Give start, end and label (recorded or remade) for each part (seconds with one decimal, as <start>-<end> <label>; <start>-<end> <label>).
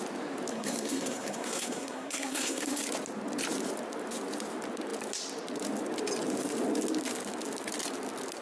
0.0-0.5 recorded; 0.5-2.8 remade; 2.8-8.4 recorded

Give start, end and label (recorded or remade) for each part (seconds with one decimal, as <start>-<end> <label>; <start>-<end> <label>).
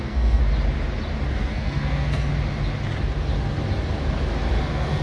0.0-0.4 remade; 0.4-1.3 recorded; 1.3-2.3 remade; 2.3-4.6 recorded; 4.6-5.0 remade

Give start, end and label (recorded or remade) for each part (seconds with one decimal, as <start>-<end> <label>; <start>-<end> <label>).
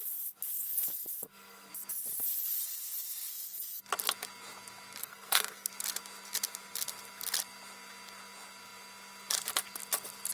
0.0-1.7 remade; 1.7-3.3 recorded; 3.3-3.8 remade; 3.8-5.0 recorded; 5.0-5.7 remade; 5.7-10.3 recorded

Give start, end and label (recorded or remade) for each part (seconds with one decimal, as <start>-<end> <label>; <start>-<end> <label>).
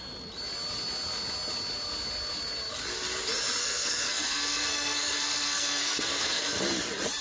0.0-3.6 recorded; 3.6-6.6 remade; 6.6-7.2 recorded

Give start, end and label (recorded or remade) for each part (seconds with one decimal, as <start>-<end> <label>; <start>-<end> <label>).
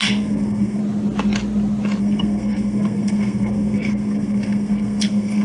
0.0-0.8 remade; 0.8-2.0 recorded; 2.0-5.4 remade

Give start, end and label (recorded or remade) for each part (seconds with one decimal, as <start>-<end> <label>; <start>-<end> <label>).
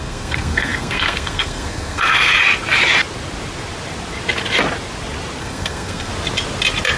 0.0-2.3 remade; 2.3-5.4 recorded; 5.4-6.1 remade; 6.1-7.0 recorded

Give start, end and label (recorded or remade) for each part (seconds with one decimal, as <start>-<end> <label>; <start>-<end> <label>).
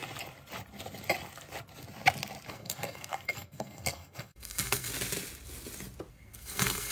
0.0-2.5 recorded; 2.5-4.9 remade; 4.9-6.1 recorded; 6.1-6.9 remade